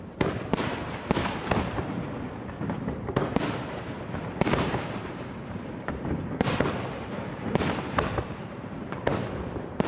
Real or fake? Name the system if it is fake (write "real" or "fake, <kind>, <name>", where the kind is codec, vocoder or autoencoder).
fake, vocoder, BigVGAN v2